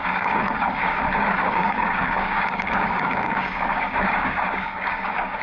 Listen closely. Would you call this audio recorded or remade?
remade